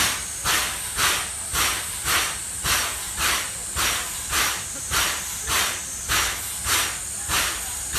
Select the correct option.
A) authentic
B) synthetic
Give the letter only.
A